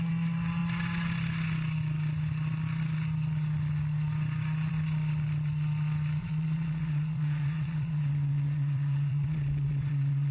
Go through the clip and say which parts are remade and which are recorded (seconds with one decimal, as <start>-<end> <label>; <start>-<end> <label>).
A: 0.0-6.2 recorded; 6.2-10.3 remade